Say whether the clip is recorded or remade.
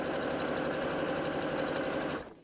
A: recorded